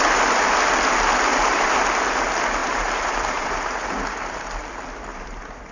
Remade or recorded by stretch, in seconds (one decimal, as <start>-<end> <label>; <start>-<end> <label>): 0.0-1.3 recorded; 1.3-1.8 remade; 1.8-2.6 recorded; 2.6-4.6 remade; 4.6-5.1 recorded; 5.1-5.7 remade